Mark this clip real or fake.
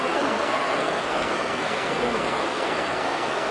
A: fake